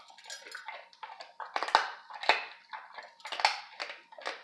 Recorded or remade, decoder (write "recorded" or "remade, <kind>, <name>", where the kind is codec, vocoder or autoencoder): recorded